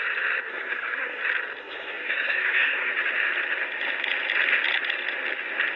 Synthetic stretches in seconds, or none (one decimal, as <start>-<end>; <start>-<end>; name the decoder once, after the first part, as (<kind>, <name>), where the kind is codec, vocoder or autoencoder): 0.5-1.2 (codec, SNAC); 1.6-2.9